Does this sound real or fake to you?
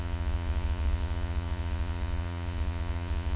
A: fake